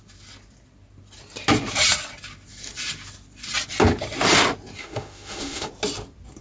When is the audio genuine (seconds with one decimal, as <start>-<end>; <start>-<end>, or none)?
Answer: 0.0-4.8; 5.7-6.4